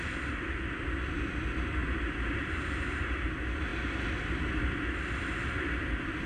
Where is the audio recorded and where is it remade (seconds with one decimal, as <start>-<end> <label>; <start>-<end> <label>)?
0.0-1.8 recorded; 1.8-3.3 remade; 3.3-6.3 recorded